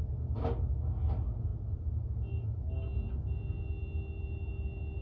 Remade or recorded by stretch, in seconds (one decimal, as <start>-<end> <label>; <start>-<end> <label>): 0.0-5.0 recorded